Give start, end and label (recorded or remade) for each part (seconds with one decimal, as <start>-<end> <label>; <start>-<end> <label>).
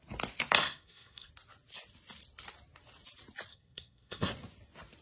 0.0-0.6 recorded; 0.6-1.3 remade; 1.3-3.5 recorded; 3.5-4.3 remade; 4.3-5.0 recorded